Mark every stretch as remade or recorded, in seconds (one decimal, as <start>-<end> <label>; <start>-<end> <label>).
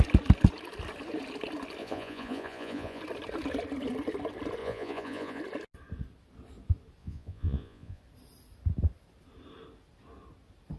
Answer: 0.0-1.8 recorded; 1.8-3.0 remade; 3.0-4.6 recorded; 4.6-5.4 remade; 5.4-7.0 recorded; 7.0-8.0 remade; 8.0-10.8 recorded